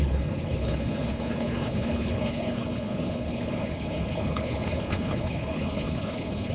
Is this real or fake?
fake